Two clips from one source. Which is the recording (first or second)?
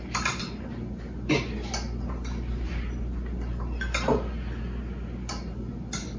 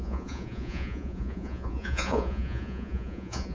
first